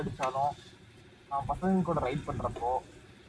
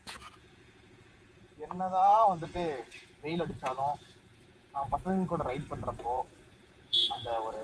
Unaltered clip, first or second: first